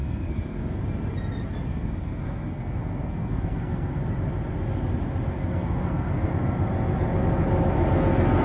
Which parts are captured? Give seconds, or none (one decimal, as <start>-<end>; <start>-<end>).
0.8-1.7; 4.0-5.4; 6.3-8.4